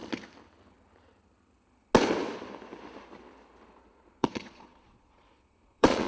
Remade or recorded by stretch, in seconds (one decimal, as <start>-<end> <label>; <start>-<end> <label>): 0.0-3.7 recorded; 3.7-6.1 remade